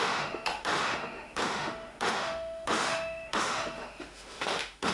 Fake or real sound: fake